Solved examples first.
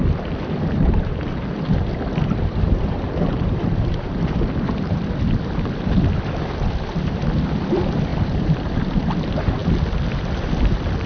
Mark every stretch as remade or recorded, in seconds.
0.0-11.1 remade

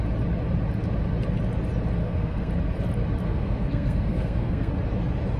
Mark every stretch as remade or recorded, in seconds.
0.0-2.0 recorded; 2.0-2.5 remade; 2.5-3.2 recorded; 3.2-4.7 remade; 4.7-5.4 recorded

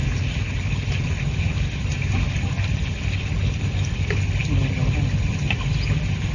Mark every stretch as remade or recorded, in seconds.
0.0-6.3 recorded

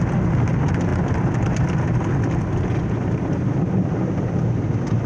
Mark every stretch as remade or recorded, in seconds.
0.0-5.1 recorded

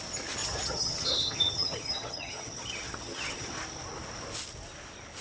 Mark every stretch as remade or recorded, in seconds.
0.0-0.4 recorded; 0.4-3.5 remade; 3.5-5.2 recorded